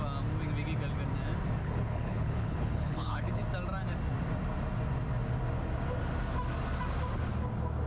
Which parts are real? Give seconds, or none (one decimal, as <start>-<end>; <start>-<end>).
0.0-1.6; 3.4-7.9